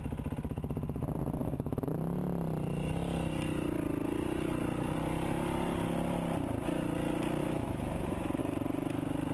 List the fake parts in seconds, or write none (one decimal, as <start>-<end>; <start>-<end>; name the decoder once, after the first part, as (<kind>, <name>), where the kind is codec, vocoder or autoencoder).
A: 1.4-1.9 (autoencoder, DAC-VAE); 7.4-8.4